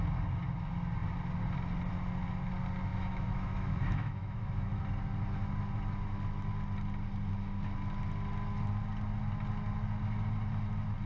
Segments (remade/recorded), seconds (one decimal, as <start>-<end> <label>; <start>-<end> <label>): 0.0-2.9 recorded; 2.9-4.8 remade; 4.8-11.1 recorded